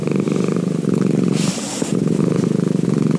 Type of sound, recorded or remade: recorded